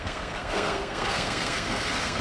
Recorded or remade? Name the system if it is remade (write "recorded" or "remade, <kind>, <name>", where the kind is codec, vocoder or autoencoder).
remade, codec, SNAC